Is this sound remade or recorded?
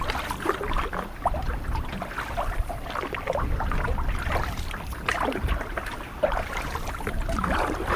remade